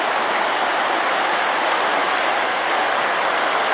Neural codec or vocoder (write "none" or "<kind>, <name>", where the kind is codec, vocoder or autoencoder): none